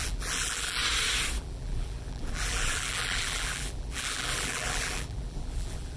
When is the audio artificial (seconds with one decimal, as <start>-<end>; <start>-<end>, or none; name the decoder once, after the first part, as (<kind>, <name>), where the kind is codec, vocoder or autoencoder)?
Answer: 0.0-0.8 (vocoder, BigVGAN v2); 1.4-6.0